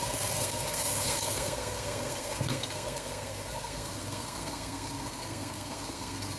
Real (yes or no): no